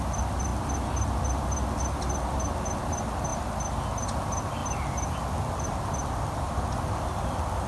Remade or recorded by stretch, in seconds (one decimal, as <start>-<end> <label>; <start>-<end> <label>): 0.0-7.7 recorded